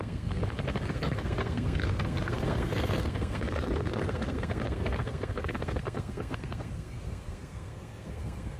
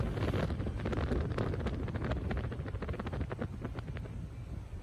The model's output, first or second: first